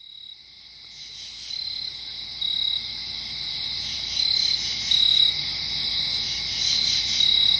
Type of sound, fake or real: real